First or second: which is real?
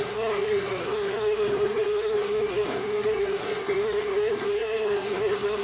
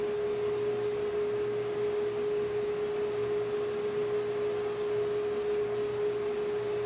second